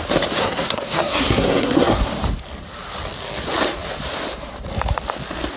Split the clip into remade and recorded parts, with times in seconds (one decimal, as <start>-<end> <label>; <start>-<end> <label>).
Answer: 0.0-0.4 recorded; 0.4-2.1 remade; 2.1-5.6 recorded